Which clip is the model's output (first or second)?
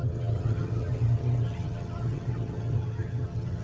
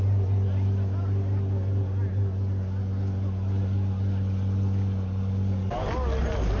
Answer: first